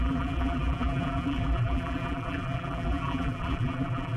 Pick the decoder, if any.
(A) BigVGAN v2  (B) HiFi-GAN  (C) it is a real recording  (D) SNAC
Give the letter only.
A